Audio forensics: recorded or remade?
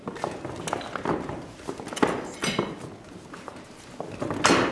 recorded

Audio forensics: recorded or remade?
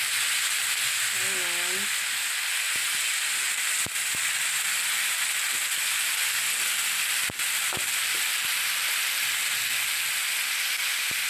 recorded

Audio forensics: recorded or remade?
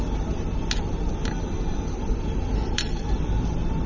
recorded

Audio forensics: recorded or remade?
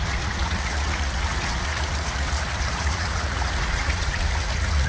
remade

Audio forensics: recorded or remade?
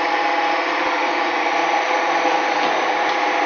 recorded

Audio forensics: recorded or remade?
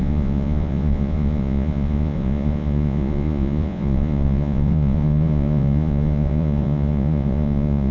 remade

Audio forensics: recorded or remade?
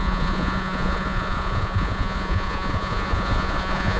remade